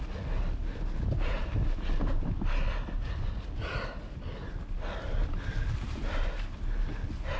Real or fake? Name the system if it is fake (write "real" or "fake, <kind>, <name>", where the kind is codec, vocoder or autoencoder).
real